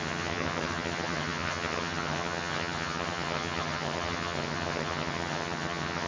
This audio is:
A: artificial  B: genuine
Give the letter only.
A